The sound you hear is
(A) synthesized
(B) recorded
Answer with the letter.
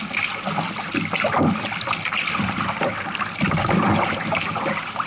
B